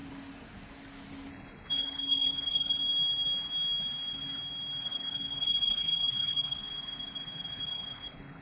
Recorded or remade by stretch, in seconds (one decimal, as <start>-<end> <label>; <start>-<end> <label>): 0.0-1.3 recorded; 1.3-2.8 remade; 2.8-4.8 recorded; 4.8-8.4 remade